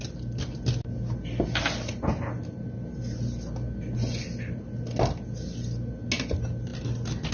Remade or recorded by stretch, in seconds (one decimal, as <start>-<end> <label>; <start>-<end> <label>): 0.0-7.3 recorded